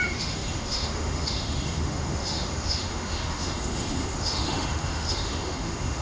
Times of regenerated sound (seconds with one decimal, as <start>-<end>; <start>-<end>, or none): 0.0-6.0